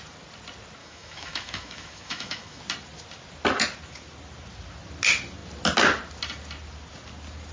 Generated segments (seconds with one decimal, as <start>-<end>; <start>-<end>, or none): 0.8-2.6